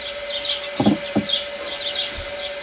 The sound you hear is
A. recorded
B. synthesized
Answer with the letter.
B